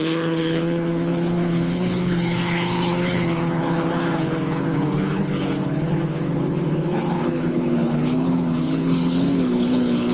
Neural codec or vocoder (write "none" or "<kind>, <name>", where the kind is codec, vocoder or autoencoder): codec, HILCodec